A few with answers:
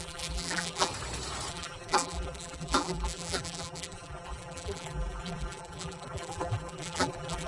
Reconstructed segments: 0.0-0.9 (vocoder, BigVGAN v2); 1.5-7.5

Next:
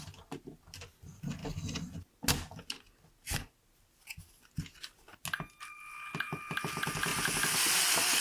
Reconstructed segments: none